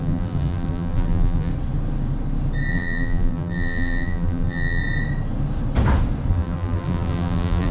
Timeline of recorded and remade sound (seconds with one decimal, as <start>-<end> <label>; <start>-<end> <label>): 0.0-1.5 remade; 1.5-2.7 recorded; 2.7-4.8 remade; 4.8-6.3 recorded; 6.3-7.7 remade